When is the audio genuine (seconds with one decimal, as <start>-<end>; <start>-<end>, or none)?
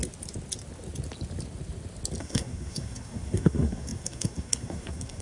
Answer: 0.0-2.2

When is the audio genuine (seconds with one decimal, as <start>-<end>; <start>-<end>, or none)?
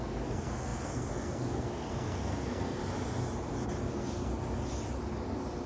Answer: 2.8-3.9; 4.3-5.7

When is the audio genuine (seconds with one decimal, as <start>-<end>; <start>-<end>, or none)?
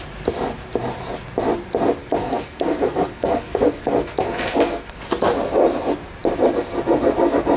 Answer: 0.0-2.0; 5.0-7.6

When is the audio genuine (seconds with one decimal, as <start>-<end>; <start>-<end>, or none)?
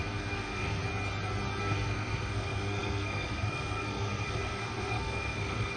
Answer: 0.8-1.6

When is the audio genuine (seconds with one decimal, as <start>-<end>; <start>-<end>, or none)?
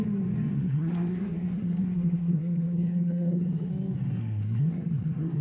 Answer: 0.0-0.5; 3.7-4.2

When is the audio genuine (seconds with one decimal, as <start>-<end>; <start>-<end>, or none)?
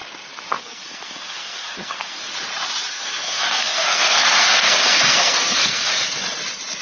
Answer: 0.0-0.6; 2.3-2.9; 5.9-6.8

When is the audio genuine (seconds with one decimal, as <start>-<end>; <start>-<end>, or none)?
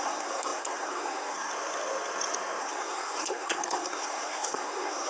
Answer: 1.5-2.6